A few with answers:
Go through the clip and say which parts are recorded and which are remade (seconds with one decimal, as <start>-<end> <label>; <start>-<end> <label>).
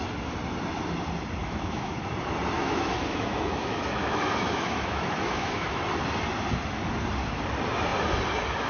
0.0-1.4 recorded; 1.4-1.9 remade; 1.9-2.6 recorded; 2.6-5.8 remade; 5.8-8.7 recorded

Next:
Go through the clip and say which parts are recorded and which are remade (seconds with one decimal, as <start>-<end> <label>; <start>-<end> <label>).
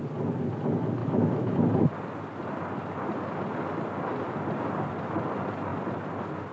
0.0-1.0 recorded; 1.0-1.6 remade; 1.6-6.5 recorded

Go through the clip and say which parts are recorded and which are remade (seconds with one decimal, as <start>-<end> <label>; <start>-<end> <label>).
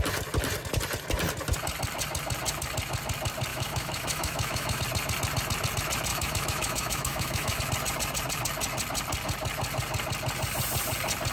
0.0-3.5 recorded; 3.5-4.8 remade; 4.8-6.1 recorded; 6.1-7.6 remade; 7.6-11.3 recorded